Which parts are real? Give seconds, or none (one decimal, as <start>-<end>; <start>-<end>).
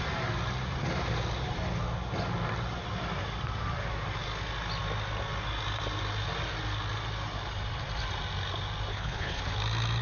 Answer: 0.0-8.9; 9.4-10.0